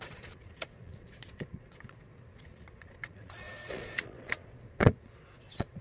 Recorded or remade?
remade